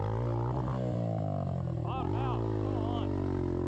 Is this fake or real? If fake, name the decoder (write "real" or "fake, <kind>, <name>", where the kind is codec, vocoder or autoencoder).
real